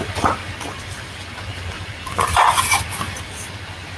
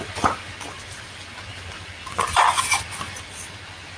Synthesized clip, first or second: first